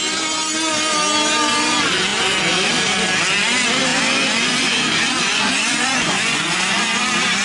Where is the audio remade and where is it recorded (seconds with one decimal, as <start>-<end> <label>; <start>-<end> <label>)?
0.0-3.9 recorded; 3.9-7.0 remade; 7.0-7.4 recorded